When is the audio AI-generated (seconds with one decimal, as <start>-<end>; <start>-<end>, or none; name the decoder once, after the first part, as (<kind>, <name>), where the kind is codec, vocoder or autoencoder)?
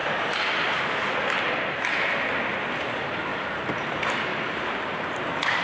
4.3-5.6 (vocoder, BigVGAN v2)